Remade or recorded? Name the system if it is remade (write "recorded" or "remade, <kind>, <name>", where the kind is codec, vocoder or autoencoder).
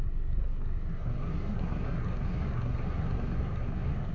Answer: remade, codec, SNAC